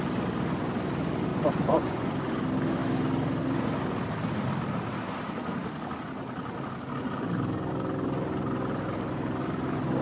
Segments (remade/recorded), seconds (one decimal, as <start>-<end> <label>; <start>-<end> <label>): 0.0-1.3 recorded; 1.3-2.1 remade; 2.1-10.0 recorded